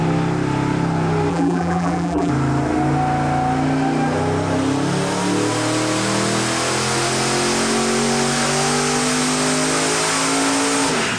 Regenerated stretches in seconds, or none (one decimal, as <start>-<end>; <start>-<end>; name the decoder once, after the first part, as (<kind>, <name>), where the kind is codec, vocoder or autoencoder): 1.3-2.3 (vocoder, BigVGAN v2)